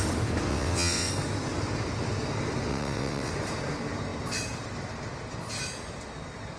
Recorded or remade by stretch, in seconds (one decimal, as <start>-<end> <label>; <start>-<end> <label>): 0.0-0.5 recorded; 0.5-1.1 remade; 1.1-2.7 recorded; 2.7-3.3 remade; 3.3-6.6 recorded